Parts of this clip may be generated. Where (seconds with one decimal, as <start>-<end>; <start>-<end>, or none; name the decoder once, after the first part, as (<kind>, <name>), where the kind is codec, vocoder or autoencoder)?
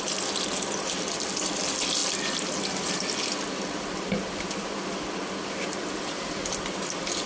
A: none